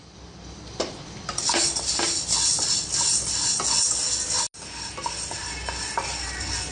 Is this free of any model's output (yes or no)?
yes